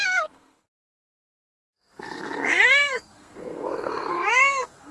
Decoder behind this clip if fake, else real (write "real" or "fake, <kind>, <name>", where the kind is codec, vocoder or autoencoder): fake, codec, SNAC